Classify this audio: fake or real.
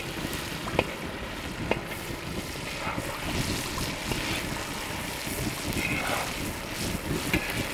real